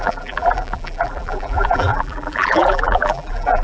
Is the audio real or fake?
fake